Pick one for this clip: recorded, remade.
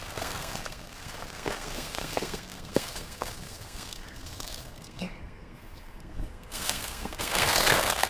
remade